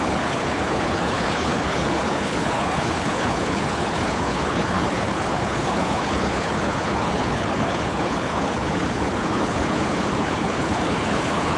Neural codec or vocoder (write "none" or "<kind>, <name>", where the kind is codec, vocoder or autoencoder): codec, HILCodec